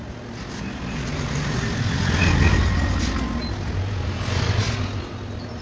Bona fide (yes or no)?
yes